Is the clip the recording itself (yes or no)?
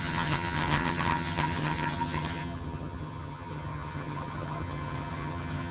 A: no